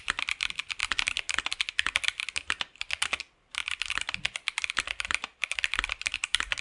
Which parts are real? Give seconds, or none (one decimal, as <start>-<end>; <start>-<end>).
0.8-1.4